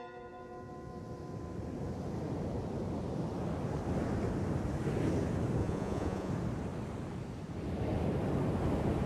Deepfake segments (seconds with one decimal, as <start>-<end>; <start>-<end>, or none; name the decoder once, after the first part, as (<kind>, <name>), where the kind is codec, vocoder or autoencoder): 5.6-6.3 (vocoder, Vocos)